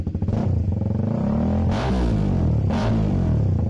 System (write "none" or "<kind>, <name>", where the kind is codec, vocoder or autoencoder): none